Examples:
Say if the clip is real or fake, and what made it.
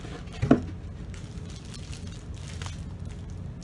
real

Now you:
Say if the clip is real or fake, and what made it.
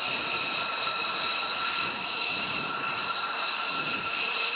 fake, vocoder, Vocos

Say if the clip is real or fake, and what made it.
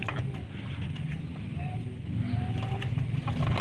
real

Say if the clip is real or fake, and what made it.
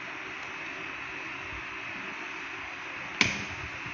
real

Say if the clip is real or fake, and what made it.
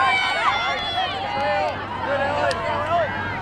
real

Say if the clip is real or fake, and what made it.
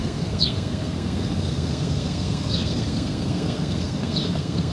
fake, codec, SNAC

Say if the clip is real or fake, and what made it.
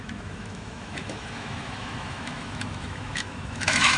fake, autoencoder, DAC-VAE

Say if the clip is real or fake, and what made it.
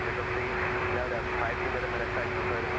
real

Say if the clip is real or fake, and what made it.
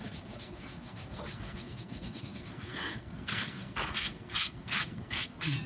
fake, codec, SNAC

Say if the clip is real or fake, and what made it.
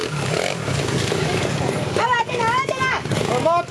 fake, codec, DAC